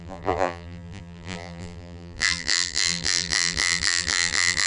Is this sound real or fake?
fake